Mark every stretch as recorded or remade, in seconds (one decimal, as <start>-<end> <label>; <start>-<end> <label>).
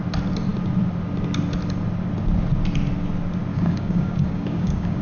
0.0-3.5 recorded; 3.5-5.0 remade